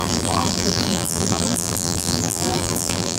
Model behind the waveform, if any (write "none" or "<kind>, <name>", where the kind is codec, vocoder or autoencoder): vocoder, BigVGAN v2